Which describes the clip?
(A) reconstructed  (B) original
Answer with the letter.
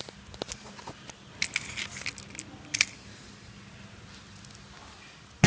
B